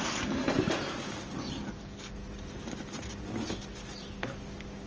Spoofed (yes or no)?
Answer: no